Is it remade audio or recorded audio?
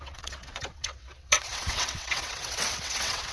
remade